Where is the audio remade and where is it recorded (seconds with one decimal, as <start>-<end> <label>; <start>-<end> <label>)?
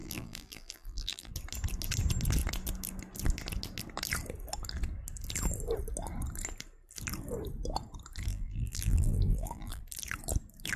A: 0.0-1.3 remade; 1.3-8.3 recorded; 8.3-9.8 remade; 9.8-10.8 recorded